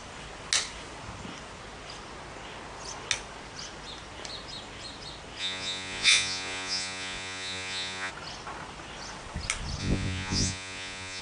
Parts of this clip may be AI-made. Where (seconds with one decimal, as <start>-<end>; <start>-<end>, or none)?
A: 5.4-8.1; 9.8-11.2

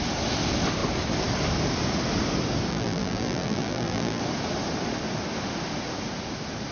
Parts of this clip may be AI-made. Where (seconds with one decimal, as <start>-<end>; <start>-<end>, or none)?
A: 2.7-4.2

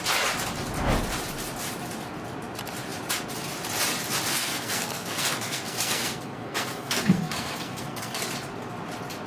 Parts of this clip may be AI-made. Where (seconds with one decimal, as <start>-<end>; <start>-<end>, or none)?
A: 4.3-8.3

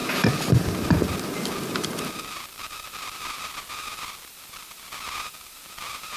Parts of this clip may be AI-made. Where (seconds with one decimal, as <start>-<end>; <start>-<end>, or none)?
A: 0.0-3.7

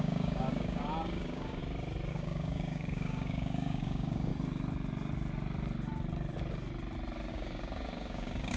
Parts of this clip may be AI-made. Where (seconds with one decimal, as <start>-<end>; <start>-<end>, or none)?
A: 0.0-1.6; 2.1-4.3; 7.3-8.6

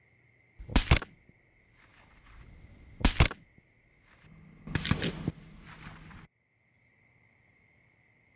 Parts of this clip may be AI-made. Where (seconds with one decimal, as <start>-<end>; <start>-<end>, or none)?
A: none

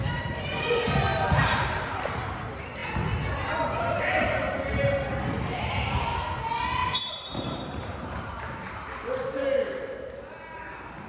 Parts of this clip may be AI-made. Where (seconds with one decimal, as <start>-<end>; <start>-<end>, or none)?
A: 1.1-2.2; 6.8-8.4

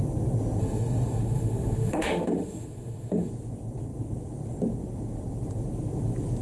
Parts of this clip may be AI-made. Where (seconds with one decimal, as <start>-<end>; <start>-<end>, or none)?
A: 0.6-3.3